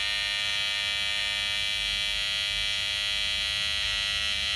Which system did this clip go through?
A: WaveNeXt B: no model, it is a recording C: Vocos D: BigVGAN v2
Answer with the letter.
B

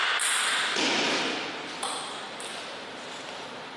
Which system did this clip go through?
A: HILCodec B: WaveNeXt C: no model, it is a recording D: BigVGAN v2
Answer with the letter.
C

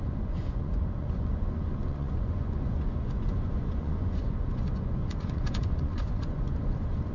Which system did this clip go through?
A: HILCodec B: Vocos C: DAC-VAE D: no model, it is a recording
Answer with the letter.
B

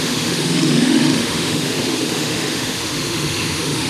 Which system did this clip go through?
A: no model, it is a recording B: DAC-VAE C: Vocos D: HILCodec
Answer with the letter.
B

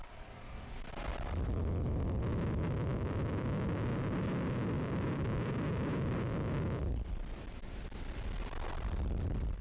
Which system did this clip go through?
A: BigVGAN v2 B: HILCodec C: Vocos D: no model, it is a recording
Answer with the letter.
A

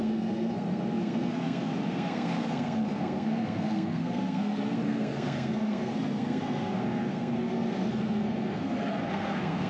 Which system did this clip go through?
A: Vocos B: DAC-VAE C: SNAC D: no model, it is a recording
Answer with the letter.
C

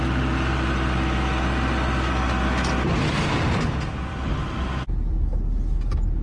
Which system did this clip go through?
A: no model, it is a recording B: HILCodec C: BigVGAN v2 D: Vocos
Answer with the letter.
A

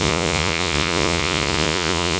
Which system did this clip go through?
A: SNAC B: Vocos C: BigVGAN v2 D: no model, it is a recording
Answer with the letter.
B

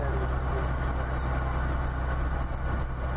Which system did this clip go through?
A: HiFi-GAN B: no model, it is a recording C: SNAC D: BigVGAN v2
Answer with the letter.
B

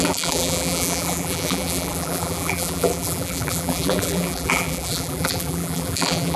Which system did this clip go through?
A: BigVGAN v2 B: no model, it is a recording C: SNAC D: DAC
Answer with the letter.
A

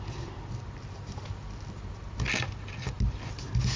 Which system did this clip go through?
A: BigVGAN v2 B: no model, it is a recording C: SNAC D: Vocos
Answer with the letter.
B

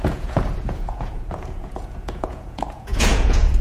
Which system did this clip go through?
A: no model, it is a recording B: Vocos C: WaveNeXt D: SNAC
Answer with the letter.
B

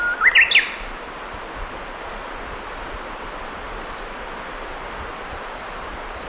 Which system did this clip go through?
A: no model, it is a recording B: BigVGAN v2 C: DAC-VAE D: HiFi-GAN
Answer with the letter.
A